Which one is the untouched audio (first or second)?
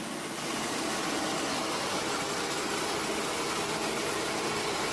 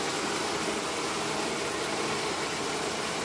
first